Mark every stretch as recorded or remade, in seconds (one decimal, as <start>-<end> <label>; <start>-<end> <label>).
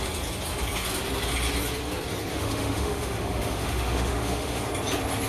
0.0-2.3 recorded; 2.3-4.6 remade; 4.6-5.3 recorded